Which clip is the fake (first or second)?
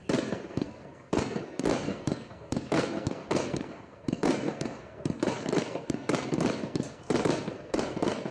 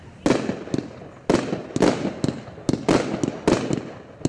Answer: first